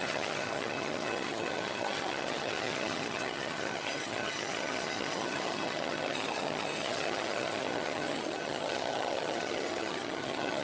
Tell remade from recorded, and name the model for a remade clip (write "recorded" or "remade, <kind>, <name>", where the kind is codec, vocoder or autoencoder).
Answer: remade, vocoder, HiFi-GAN